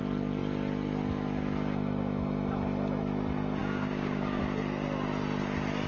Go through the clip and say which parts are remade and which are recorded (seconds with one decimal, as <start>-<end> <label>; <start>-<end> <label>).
0.0-3.6 recorded; 3.6-4.4 remade; 4.4-5.9 recorded